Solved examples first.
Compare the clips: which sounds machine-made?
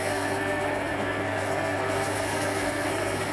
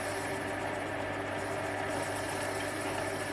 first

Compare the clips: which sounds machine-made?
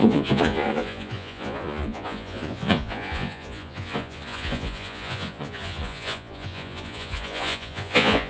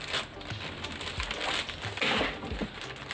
first